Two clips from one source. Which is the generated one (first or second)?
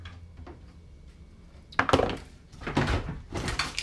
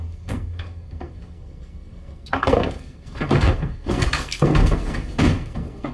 second